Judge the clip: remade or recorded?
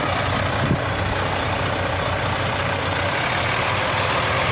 recorded